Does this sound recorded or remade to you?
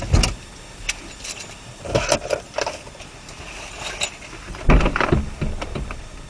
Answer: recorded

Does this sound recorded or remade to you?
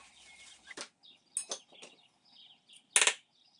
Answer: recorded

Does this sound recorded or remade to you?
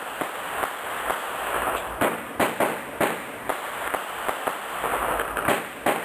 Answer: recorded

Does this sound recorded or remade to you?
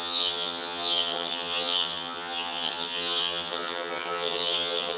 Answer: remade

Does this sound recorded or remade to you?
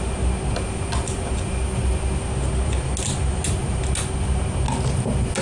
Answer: recorded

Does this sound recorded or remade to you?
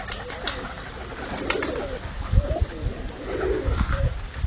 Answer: recorded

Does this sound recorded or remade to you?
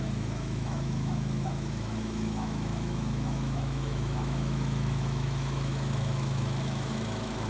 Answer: remade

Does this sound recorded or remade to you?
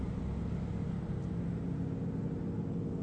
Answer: recorded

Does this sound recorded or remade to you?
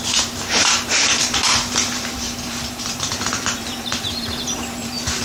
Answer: remade